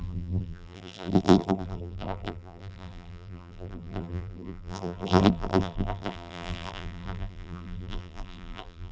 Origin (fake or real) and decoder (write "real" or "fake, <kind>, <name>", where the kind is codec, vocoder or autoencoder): fake, vocoder, BigVGAN v2